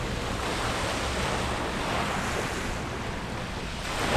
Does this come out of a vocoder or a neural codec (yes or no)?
no